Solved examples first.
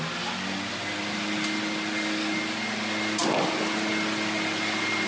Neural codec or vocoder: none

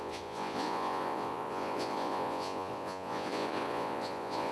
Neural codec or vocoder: vocoder, Vocos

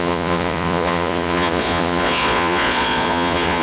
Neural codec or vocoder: vocoder, Vocos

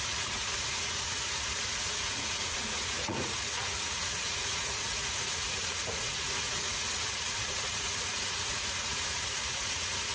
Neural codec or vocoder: vocoder, Vocos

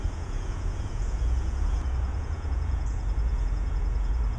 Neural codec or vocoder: vocoder, Vocos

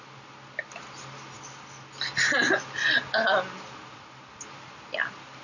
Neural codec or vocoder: none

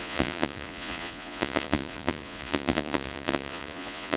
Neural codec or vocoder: vocoder, Vocos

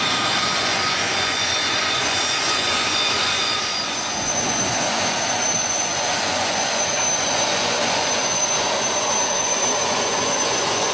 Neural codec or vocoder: vocoder, Vocos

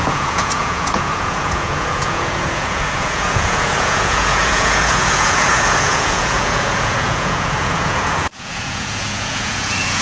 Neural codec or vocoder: vocoder, Vocos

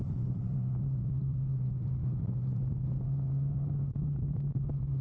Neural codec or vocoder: none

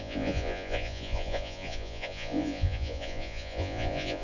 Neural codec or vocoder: vocoder, Vocos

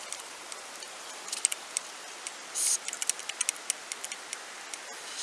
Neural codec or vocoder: none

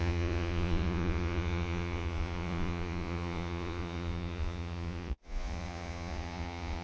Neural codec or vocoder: vocoder, Vocos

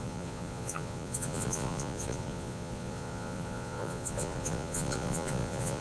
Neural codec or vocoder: vocoder, Vocos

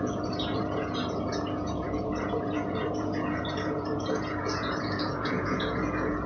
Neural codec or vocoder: vocoder, Vocos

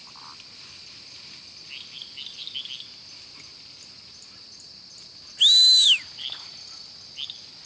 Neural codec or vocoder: none